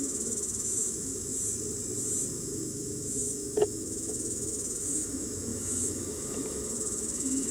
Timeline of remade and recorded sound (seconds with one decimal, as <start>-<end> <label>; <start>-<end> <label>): 0.0-1.3 remade; 1.3-2.3 recorded; 2.3-7.5 remade